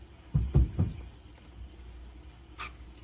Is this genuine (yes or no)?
yes